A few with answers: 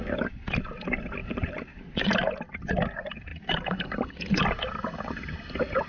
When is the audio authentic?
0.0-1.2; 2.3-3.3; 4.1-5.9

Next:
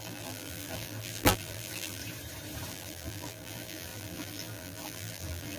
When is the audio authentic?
2.0-2.7